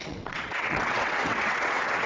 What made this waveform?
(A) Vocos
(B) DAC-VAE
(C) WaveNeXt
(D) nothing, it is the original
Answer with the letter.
C